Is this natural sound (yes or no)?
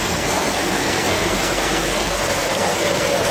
no